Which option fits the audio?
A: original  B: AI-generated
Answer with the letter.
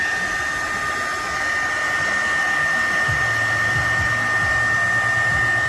A